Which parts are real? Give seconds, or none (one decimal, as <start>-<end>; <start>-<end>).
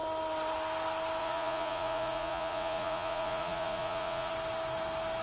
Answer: 0.0-1.2; 4.3-5.2